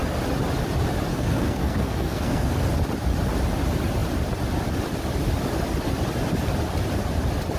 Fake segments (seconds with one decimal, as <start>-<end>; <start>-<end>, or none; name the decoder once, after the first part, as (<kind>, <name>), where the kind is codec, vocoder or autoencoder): 1.1-2.5 (codec, SNAC)